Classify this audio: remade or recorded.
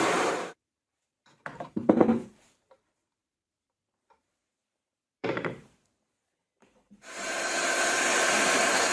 remade